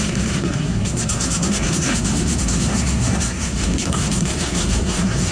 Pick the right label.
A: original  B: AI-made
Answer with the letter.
B